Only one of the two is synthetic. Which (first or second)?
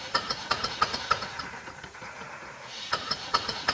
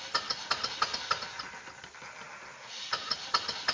first